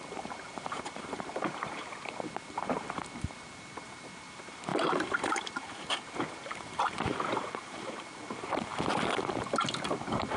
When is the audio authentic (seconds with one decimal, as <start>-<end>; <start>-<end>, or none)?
8.7-10.0